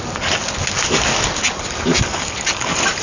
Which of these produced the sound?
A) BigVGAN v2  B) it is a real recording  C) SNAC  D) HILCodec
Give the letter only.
B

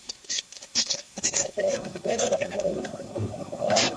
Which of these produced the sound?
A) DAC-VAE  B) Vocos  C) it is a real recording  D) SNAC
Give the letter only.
D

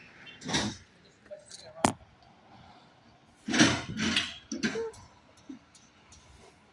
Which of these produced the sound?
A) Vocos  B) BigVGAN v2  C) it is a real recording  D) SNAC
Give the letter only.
C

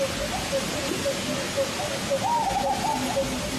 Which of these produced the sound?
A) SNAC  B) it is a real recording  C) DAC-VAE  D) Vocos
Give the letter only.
B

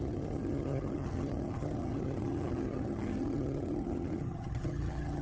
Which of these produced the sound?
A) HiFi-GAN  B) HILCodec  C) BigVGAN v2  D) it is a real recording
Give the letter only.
A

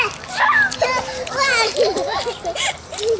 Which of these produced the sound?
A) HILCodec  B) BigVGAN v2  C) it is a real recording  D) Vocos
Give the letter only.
C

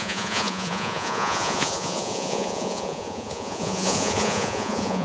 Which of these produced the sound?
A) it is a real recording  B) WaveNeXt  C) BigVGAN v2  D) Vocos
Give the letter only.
D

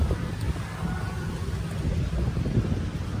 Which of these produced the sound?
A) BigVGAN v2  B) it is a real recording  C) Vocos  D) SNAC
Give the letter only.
B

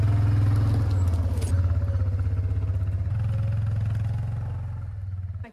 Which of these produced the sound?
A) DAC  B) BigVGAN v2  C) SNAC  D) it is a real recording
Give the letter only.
D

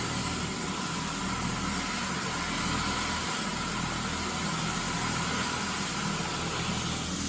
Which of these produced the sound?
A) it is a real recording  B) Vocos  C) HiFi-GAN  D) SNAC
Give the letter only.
A